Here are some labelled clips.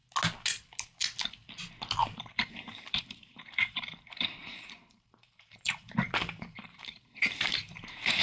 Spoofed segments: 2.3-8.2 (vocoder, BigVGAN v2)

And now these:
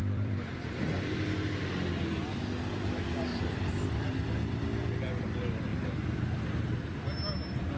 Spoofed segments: 0.0-1.5 (vocoder, BigVGAN v2); 3.3-5.2

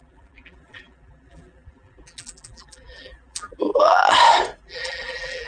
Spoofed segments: 0.0-4.0 (vocoder, BigVGAN v2); 4.6-5.5

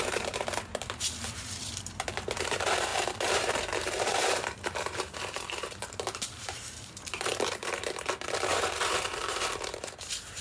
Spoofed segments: 0.0-10.4 (vocoder, BigVGAN v2)

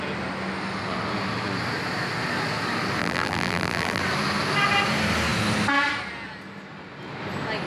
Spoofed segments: 3.0-4.0 (vocoder, BigVGAN v2)

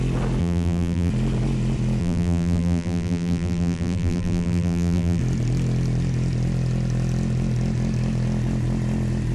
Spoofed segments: 0.4-1.1 (vocoder, BigVGAN v2); 2.0-5.2

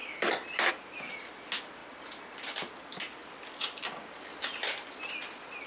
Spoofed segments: 0.0-0.7 (vocoder, BigVGAN v2); 1.8-2.7

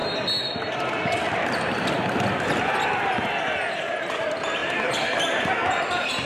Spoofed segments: 4.6-5.5 (vocoder, BigVGAN v2)